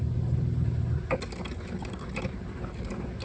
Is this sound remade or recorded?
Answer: recorded